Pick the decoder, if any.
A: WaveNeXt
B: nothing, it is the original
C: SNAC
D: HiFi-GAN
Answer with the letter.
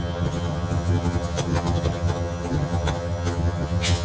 D